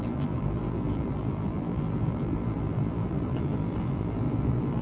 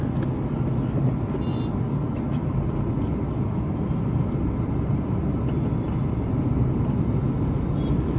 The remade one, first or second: first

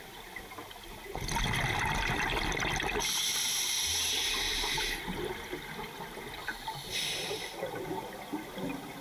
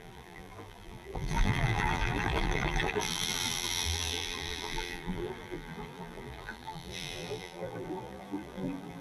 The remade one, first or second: second